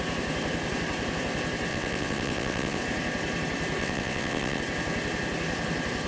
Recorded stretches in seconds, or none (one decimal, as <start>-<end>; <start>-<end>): 0.0-1.7; 2.8-3.8; 4.6-6.1